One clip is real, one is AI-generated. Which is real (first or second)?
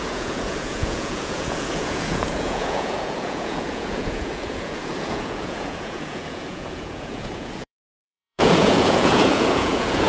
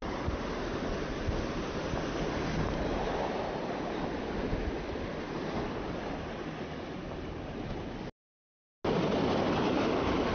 second